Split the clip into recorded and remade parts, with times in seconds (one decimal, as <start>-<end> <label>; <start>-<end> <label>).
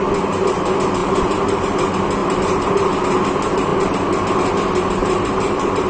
0.0-1.0 recorded; 1.0-1.8 remade; 1.8-2.2 recorded; 2.2-2.7 remade; 2.7-5.0 recorded; 5.0-5.9 remade